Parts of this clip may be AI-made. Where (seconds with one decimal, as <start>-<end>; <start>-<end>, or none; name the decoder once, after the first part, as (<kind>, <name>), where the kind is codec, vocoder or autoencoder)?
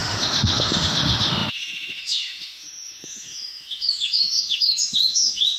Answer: 0.0-5.6 (autoencoder, DAC-VAE)